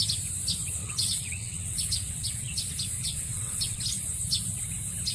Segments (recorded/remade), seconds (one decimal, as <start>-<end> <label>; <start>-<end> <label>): 0.0-0.8 recorded; 0.8-2.6 remade; 2.6-3.0 recorded; 3.0-3.8 remade; 3.8-5.1 recorded